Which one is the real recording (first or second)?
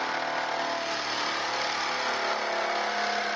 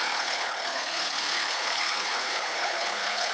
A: first